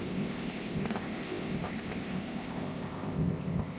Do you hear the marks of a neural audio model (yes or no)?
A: yes